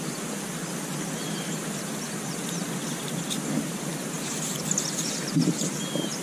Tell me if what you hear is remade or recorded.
recorded